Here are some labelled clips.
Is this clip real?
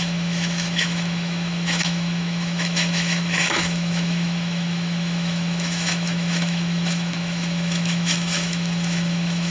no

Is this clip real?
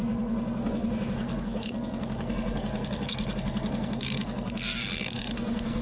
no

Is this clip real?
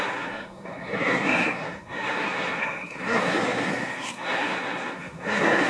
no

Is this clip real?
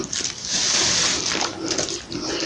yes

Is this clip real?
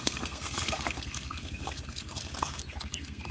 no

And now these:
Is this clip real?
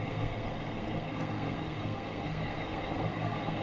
no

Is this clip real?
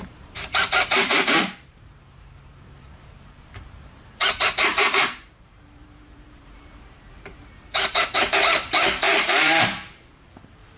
no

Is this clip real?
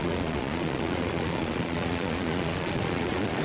no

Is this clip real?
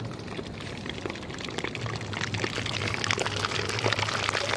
yes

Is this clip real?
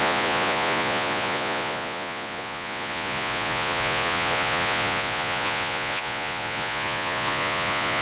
no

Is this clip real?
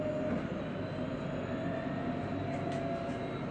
yes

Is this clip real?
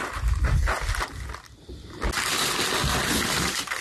yes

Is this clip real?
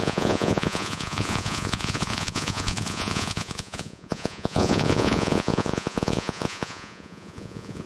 no